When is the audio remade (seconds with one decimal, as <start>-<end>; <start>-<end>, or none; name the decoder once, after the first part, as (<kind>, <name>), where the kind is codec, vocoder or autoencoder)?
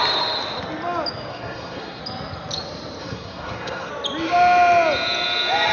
1.3-2.0 (codec, SNAC); 3.0-3.9